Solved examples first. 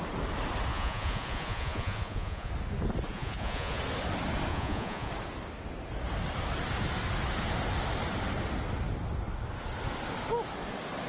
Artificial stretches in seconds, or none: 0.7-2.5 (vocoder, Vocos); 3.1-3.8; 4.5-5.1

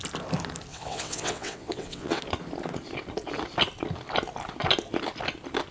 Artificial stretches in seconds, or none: 0.7-2.2 (vocoder, WaveNeXt)

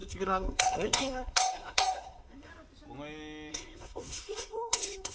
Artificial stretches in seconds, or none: 0.0-2.5 (codec, SNAC); 3.5-5.1

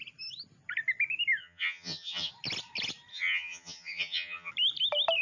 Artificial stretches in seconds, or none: 1.4-2.3 (vocoder, HiFi-GAN); 3.1-4.5